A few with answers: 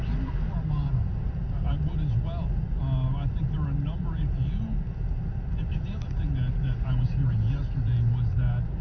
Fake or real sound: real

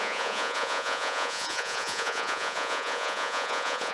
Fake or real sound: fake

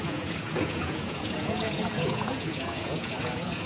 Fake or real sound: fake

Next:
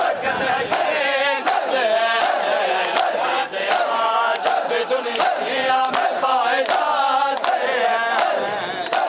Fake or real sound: real